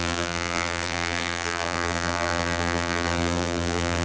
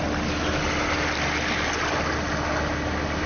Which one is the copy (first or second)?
first